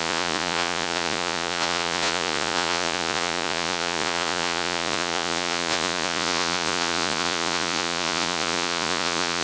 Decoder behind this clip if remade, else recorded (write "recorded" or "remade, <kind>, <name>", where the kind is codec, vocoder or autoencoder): remade, vocoder, Vocos